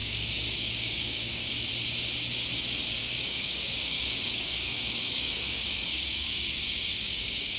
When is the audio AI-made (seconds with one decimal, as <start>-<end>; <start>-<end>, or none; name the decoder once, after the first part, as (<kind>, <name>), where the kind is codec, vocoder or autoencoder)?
0.0-1.5 (codec, DAC); 3.0-7.6